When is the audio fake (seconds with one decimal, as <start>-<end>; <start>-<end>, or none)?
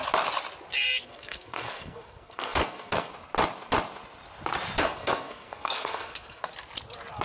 0.7-3.1; 4.8-6.5